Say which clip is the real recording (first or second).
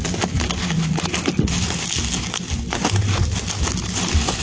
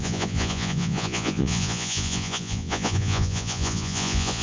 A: first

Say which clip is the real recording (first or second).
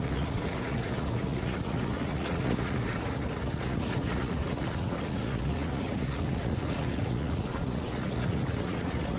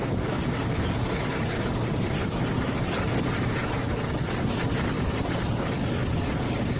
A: second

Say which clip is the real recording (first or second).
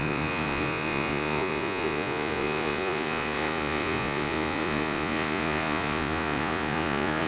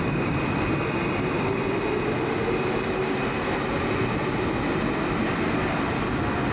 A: second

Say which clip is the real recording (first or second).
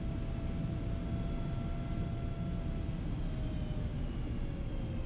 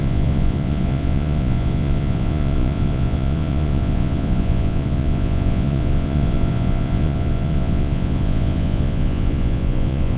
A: first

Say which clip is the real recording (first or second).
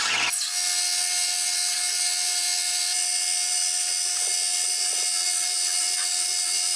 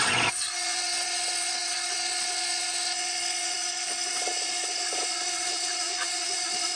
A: first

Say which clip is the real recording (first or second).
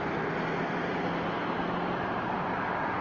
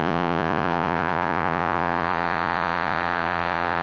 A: first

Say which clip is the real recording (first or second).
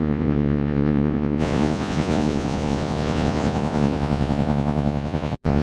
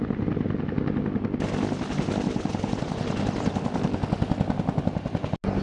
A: second